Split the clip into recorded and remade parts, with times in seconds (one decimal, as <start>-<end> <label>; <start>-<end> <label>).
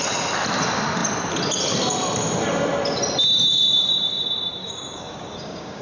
0.0-4.6 recorded; 4.6-5.8 remade